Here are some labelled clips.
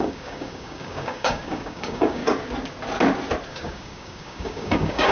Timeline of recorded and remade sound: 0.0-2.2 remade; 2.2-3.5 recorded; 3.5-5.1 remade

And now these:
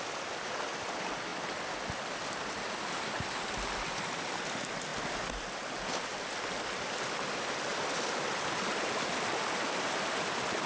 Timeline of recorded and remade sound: 0.0-10.7 recorded

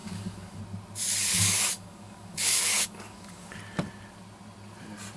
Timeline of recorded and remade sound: 0.0-0.6 remade; 0.6-1.2 recorded; 1.2-3.5 remade; 3.5-5.2 recorded

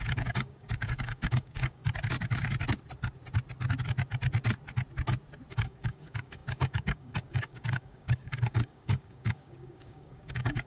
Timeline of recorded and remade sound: 0.0-1.8 remade; 1.8-5.5 recorded; 5.5-10.7 remade

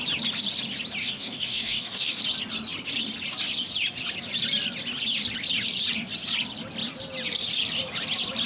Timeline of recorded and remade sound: 0.0-1.0 recorded; 1.0-2.2 remade; 2.2-8.5 recorded

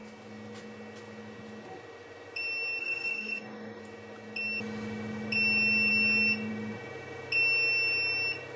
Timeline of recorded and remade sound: 0.0-2.8 recorded; 2.8-3.8 remade; 3.8-8.6 recorded